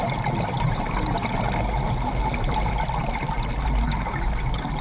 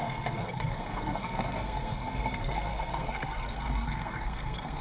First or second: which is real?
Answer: first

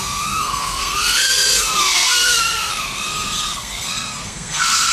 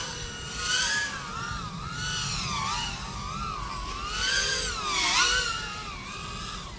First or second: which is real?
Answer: second